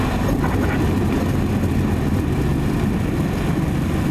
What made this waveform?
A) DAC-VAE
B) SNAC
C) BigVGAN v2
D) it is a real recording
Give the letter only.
D